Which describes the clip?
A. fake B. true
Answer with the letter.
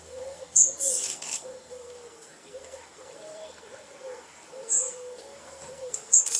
A